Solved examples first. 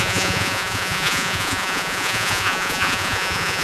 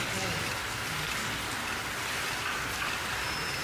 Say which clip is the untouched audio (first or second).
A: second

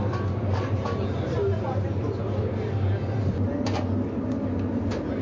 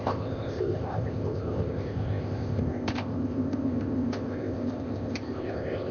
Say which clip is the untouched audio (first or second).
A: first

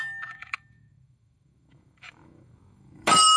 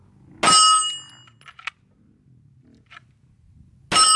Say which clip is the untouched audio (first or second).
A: second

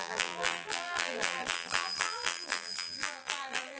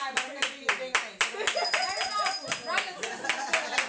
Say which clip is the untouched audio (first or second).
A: second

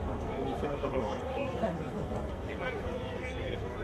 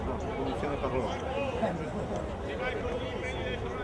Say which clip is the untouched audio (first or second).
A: second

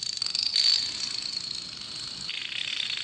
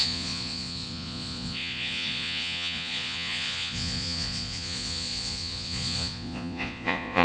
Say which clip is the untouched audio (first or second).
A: first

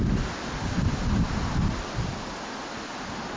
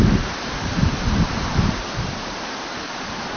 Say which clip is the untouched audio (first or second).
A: first